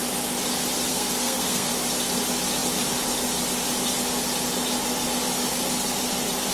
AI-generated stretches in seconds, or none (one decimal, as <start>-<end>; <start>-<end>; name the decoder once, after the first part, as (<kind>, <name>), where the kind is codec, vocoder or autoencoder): 0.9-1.7 (codec, SNAC)